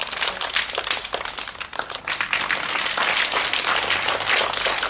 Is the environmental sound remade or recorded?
recorded